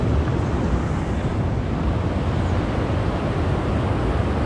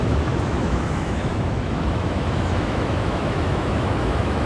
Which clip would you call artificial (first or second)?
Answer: second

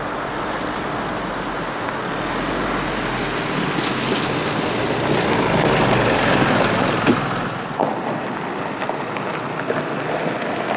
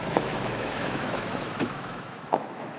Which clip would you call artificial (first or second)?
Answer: second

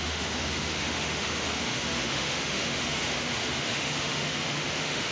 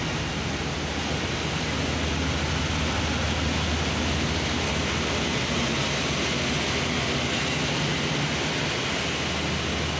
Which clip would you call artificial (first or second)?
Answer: first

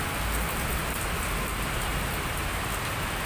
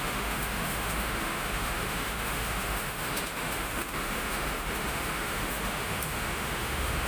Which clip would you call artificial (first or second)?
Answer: second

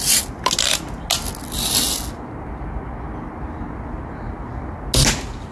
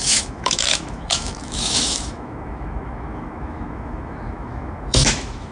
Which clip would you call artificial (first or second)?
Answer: second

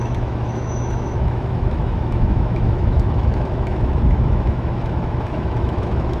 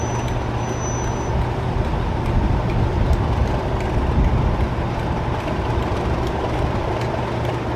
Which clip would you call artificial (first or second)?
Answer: first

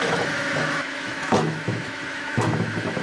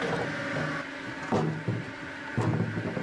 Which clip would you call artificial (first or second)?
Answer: first